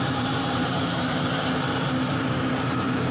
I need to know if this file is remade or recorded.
remade